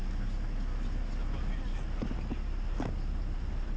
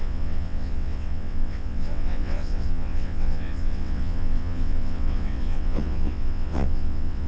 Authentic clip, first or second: first